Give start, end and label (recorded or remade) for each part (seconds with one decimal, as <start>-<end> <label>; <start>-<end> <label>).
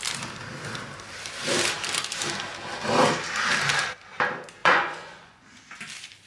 0.0-4.6 recorded; 4.6-5.6 remade; 5.6-6.3 recorded